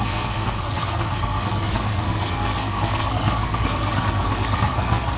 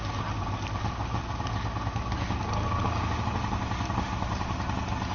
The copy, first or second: first